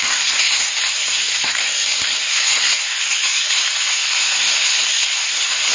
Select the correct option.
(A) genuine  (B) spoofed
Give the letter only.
B